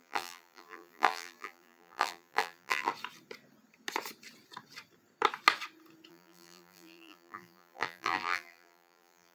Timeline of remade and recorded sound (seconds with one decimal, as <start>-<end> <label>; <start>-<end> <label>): 0.0-2.9 remade; 2.9-6.1 recorded; 6.1-9.3 remade